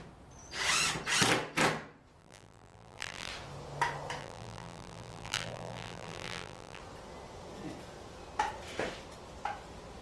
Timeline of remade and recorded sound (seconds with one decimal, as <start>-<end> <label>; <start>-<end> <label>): 0.0-2.2 recorded; 2.2-3.3 remade; 3.3-4.2 recorded; 4.2-6.8 remade; 6.8-10.0 recorded